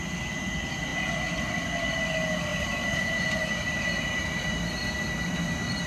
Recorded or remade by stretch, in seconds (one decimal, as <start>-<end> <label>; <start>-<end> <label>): 0.0-2.5 recorded; 2.5-4.8 remade; 4.8-5.9 recorded